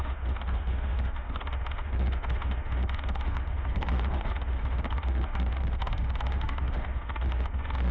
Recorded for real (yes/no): no